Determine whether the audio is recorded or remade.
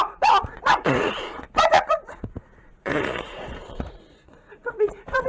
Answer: remade